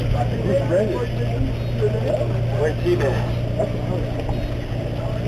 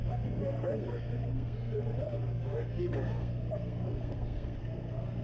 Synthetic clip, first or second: second